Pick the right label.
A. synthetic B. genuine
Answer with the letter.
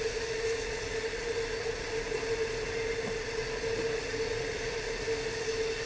B